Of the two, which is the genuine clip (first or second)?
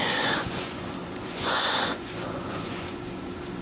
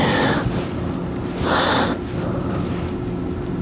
second